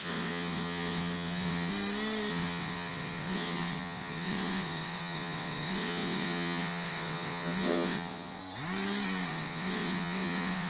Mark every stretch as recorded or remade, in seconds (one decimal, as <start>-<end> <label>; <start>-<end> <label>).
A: 0.0-1.7 remade; 1.7-2.3 recorded; 2.3-8.4 remade; 8.4-9.3 recorded; 9.3-10.7 remade